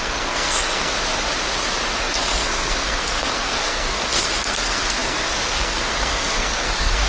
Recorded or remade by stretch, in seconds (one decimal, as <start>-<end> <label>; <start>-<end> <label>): 0.0-0.9 remade; 0.9-2.0 recorded; 2.0-7.1 remade